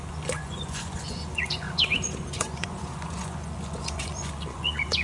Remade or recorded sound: remade